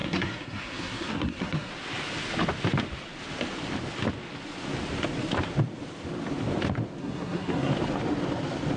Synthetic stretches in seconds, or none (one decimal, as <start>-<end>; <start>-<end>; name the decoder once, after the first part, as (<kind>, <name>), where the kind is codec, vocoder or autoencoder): 0.0-1.7 (codec, SNAC); 7.0-7.7